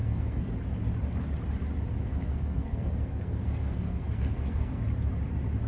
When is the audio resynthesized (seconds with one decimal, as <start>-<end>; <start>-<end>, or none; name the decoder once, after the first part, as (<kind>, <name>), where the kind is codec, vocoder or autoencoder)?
0.0-0.5 (codec, SNAC); 2.0-4.8